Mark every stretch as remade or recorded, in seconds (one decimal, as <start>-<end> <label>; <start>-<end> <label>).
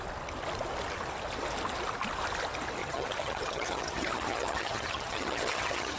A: 0.0-2.8 recorded; 2.8-6.0 remade